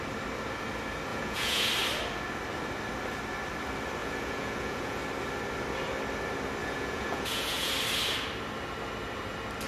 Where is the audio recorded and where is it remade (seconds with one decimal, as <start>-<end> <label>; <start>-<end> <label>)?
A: 0.0-1.1 recorded; 1.1-1.7 remade; 1.7-4.0 recorded; 4.0-5.0 remade; 5.0-6.6 recorded; 6.6-7.7 remade; 7.7-9.7 recorded